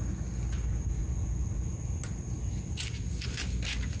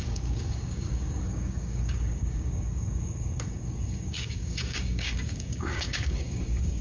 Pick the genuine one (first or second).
first